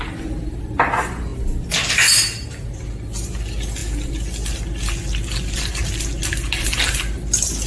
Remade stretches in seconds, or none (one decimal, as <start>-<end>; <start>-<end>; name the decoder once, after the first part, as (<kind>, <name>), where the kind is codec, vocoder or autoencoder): none

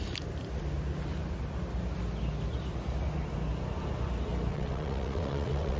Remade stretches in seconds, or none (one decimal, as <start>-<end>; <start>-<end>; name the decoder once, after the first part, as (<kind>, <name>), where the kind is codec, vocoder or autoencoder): 4.5-5.8 (vocoder, WaveNeXt)

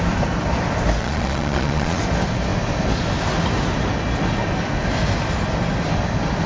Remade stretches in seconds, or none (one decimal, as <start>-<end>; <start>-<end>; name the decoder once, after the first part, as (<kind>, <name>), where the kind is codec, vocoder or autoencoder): 1.0-2.0 (vocoder, Vocos)

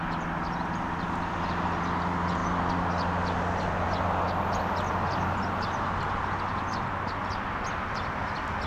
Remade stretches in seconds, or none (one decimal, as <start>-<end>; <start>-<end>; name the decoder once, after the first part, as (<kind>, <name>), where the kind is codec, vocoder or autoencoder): none

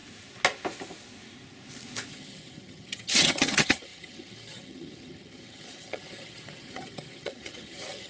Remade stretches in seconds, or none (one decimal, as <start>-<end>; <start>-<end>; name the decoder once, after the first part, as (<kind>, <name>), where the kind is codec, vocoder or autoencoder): 2.1-8.1 (vocoder, HiFi-GAN)

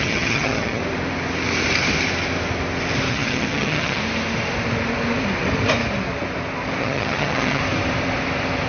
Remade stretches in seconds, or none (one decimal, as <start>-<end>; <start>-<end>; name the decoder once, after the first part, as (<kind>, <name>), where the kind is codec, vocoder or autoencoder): 0.0-0.8 (vocoder, HiFi-GAN); 3.1-4.0; 6.8-7.6